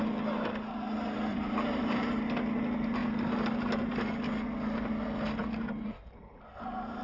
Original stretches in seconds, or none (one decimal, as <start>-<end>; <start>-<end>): 0.0-1.3; 2.1-5.4